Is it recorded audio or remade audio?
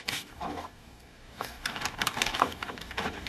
remade